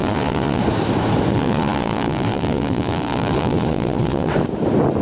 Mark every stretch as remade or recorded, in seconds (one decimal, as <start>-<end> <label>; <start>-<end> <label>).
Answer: 0.0-0.6 remade; 0.6-1.3 recorded; 1.3-4.3 remade; 4.3-5.0 recorded